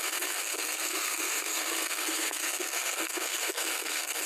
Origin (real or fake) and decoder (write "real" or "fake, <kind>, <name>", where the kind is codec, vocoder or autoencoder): fake, codec, SNAC